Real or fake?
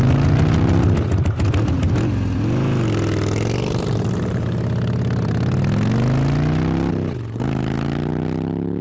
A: real